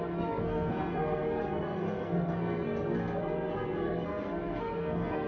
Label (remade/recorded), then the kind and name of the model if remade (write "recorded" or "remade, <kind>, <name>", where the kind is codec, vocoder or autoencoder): remade, codec, SNAC